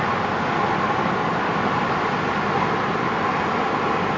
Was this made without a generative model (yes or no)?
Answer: yes